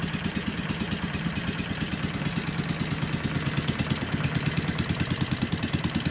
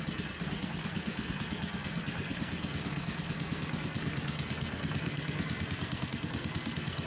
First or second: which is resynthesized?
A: second